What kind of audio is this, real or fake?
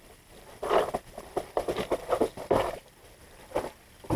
real